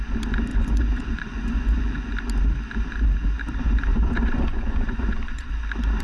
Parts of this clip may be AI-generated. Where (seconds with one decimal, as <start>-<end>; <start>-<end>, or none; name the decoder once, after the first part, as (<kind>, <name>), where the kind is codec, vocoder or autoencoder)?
0.5-2.1 (vocoder, Vocos); 3.9-5.5